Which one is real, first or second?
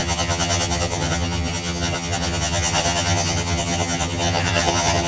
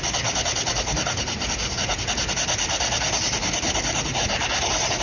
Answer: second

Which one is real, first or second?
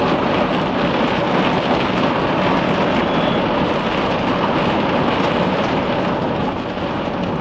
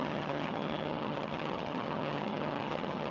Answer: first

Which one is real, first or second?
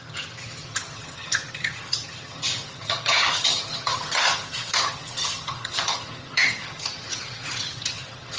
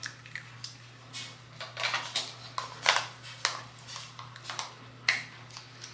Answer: second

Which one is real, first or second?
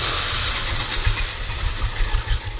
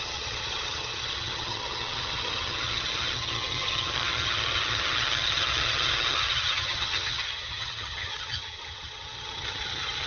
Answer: first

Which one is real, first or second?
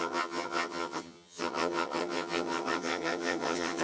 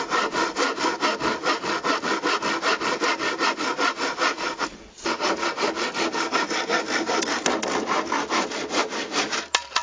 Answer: second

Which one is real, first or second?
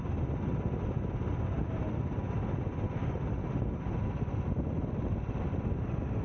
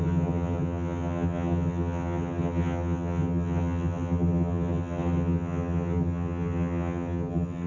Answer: first